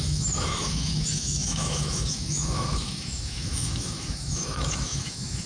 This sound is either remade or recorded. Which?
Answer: remade